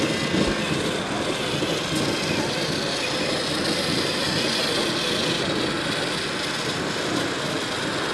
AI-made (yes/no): no